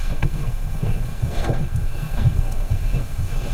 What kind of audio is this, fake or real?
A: fake